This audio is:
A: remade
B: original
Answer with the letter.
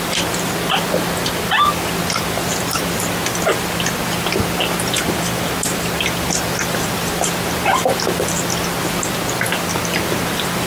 B